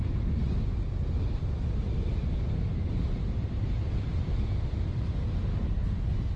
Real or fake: real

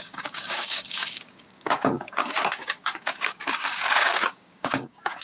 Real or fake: fake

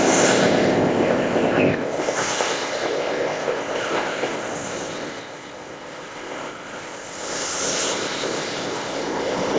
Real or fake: fake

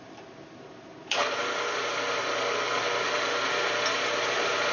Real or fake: real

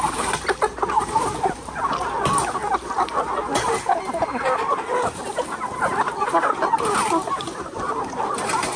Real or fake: real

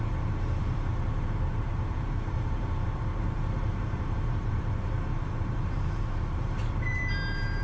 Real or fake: fake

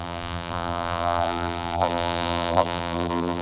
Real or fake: fake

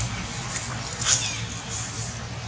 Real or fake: real